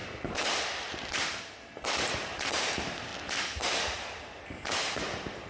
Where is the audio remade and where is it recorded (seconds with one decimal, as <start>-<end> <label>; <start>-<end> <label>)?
0.0-3.1 remade; 3.1-4.6 recorded; 4.6-5.5 remade